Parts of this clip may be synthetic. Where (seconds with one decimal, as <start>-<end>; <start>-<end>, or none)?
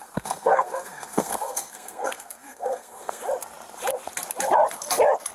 0.0-3.2